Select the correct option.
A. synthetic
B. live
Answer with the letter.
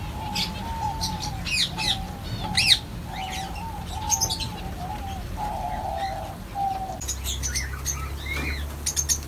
B